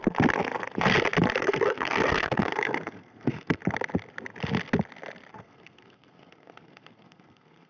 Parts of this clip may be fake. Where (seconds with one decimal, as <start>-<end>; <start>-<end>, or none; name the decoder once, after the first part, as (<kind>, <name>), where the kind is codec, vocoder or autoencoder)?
1.4-3.6 (codec, SNAC); 5.3-7.7